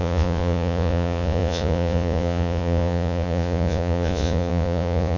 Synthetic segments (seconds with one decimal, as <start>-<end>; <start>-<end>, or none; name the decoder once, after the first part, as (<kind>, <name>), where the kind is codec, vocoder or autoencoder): 0.0-5.2 (vocoder, Vocos)